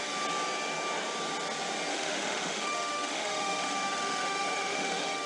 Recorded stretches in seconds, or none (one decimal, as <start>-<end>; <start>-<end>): 0.0-1.9